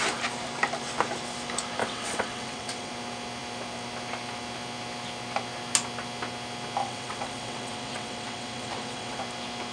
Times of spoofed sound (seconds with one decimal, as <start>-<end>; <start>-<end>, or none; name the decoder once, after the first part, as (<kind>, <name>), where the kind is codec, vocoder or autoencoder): 1.8-2.9 (vocoder, WaveNeXt); 6.8-9.2